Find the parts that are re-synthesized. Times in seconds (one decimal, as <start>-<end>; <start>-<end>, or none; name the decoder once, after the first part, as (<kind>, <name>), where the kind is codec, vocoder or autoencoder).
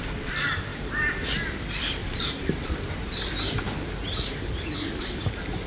0.7-1.3 (vocoder, BigVGAN v2); 2.0-5.7